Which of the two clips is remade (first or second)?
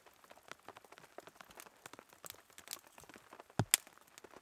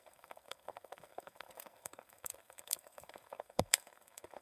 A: second